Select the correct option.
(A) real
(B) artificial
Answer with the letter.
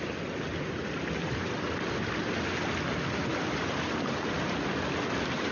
A